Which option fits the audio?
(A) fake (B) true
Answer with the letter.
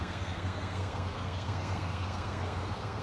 A